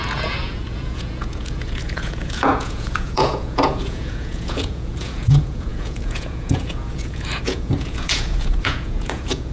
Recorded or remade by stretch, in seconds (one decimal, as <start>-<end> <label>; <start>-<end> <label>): 0.0-9.5 remade